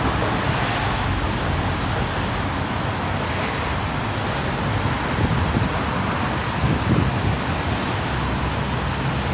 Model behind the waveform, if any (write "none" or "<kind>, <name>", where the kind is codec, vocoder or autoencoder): none